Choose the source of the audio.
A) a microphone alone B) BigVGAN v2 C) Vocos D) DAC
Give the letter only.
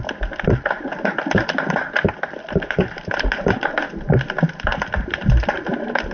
A